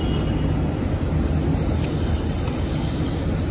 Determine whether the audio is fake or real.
real